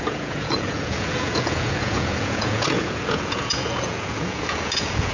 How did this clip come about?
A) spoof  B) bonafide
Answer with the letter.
A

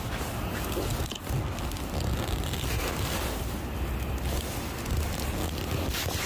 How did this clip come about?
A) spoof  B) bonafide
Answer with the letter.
B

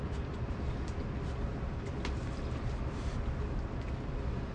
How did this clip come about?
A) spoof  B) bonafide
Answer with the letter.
B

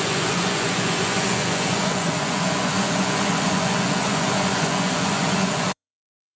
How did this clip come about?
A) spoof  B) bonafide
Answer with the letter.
A